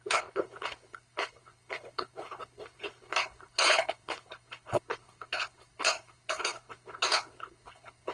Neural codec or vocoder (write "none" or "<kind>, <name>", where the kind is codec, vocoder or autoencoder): codec, HILCodec